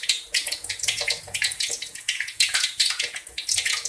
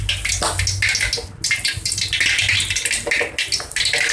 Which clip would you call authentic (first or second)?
second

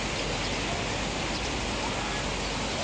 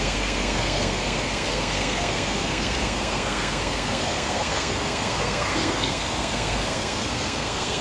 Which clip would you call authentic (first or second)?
first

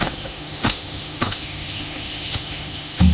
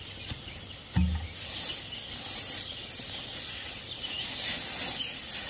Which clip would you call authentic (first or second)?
second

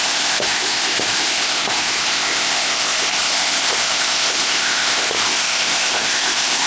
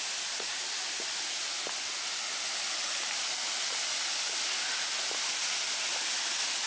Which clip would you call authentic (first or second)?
second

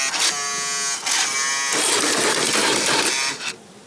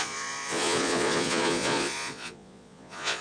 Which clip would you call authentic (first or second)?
first